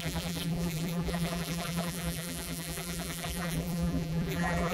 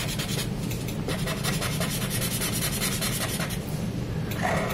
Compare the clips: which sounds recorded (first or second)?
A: second